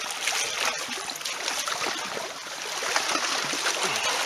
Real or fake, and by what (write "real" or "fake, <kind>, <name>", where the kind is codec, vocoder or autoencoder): real